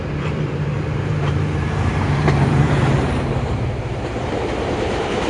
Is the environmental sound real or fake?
fake